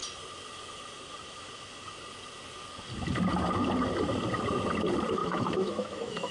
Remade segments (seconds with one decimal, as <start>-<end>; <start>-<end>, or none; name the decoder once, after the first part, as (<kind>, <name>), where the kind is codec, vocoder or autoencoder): 5.2-6.3 (autoencoder, DAC-VAE)